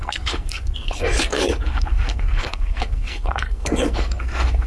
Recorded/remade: remade